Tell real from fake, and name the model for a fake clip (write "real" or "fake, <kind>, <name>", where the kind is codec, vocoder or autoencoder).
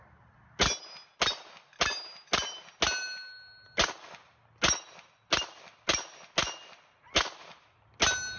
real